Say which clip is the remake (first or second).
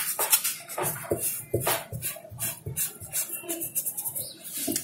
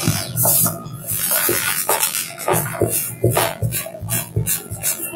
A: second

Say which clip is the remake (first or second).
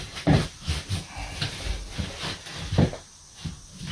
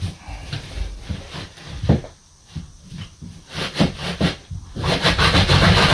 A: second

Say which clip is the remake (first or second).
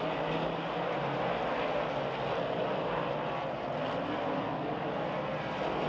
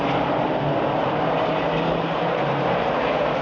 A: second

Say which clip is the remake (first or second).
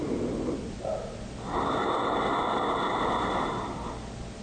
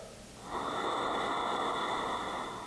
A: first